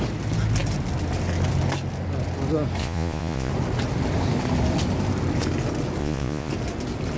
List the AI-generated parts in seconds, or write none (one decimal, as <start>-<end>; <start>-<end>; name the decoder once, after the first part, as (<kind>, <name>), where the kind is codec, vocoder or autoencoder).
2.8-3.5 (vocoder, Vocos); 6.0-6.5

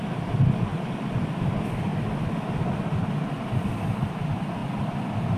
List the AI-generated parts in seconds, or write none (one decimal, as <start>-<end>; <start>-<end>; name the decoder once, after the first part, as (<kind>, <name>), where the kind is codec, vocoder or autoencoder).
0.7-1.4 (vocoder, BigVGAN v2); 4.6-5.4

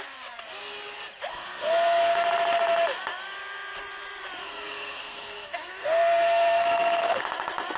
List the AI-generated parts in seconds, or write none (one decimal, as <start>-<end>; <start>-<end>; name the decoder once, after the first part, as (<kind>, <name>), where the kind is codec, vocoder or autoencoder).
1.3-2.1 (codec, SNAC); 4.4-7.2

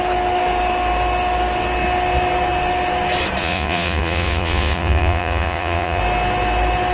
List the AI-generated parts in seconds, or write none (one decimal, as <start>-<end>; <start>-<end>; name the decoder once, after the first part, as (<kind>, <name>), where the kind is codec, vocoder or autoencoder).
3.4-6.0 (vocoder, Vocos)

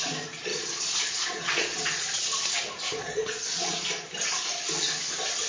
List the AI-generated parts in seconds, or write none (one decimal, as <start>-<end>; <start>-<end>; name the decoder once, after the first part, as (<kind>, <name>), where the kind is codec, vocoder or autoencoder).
0.5-2.2 (vocoder, Vocos); 3.0-3.9